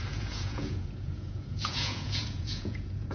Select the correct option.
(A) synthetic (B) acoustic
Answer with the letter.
A